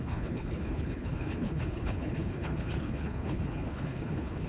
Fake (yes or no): yes